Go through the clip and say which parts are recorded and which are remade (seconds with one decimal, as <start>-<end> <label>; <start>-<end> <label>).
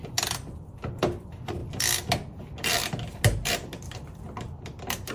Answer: 0.0-5.1 recorded